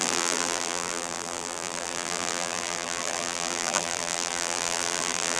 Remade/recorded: remade